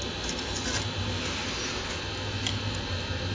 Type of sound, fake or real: real